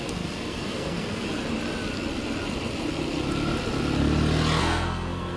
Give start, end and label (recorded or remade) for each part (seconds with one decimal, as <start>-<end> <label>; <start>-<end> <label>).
0.0-1.4 remade; 1.4-4.6 recorded; 4.6-5.4 remade